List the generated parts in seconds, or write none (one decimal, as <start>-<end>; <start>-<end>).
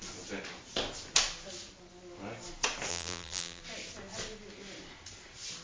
2.9-3.6